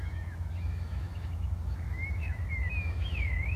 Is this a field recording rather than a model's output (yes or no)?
no